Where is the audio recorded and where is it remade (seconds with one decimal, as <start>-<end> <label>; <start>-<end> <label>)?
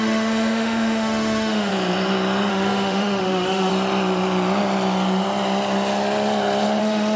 0.0-1.7 remade; 1.7-2.5 recorded; 2.5-3.7 remade; 3.7-6.8 recorded; 6.8-7.2 remade